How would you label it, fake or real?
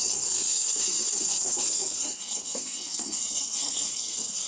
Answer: fake